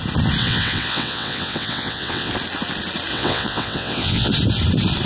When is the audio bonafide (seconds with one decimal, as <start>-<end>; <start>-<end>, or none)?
0.0-0.4; 2.3-3.1; 4.3-5.1